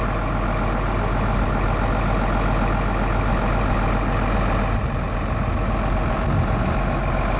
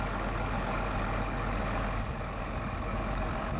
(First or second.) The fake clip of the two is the second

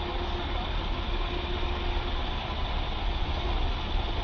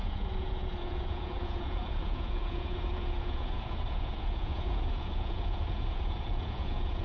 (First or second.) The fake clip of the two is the second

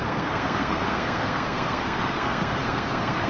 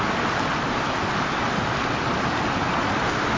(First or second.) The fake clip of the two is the first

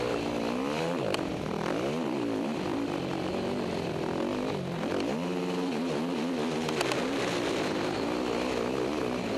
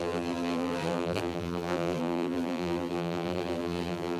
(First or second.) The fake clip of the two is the second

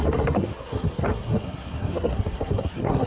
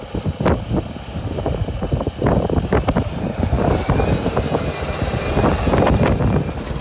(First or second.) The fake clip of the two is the first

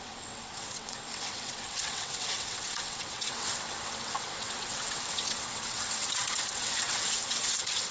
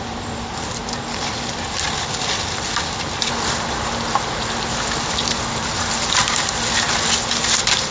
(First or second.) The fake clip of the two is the first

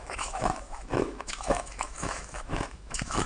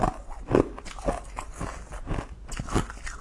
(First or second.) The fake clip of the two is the first